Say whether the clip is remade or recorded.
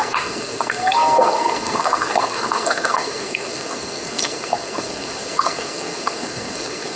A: remade